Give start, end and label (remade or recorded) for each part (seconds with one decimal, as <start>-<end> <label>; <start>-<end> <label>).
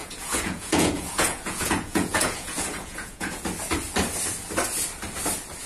0.0-3.4 remade; 3.4-5.7 recorded